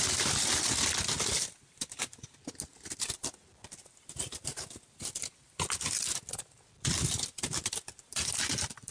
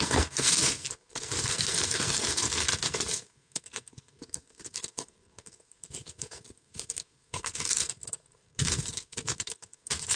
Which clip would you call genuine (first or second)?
first